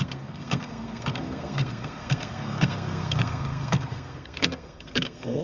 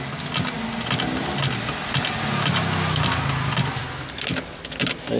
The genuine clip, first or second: second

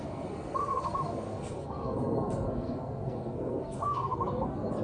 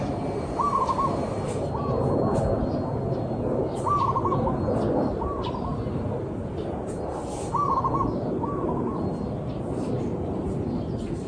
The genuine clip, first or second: second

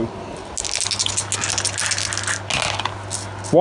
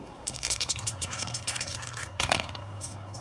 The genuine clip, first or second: first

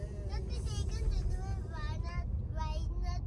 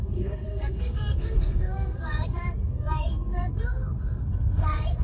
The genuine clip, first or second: first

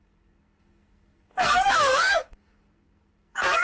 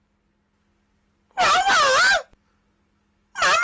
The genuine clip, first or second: second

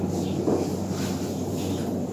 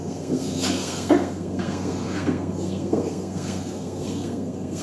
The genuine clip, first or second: first